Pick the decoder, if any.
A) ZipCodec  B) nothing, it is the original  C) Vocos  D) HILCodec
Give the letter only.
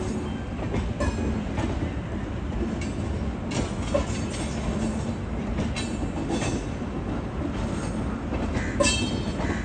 B